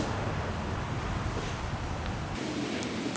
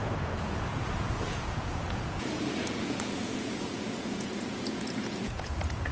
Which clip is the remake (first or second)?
second